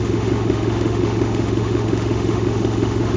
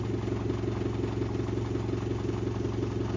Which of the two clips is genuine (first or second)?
second